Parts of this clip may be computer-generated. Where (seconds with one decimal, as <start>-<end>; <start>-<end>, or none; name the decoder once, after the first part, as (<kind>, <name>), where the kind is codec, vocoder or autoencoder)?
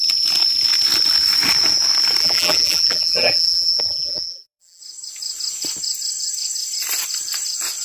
2.2-4.8 (vocoder, BigVGAN v2)